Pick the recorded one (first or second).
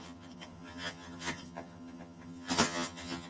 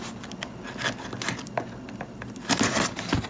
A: second